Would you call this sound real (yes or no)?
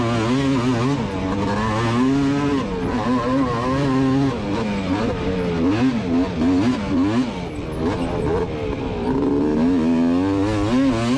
yes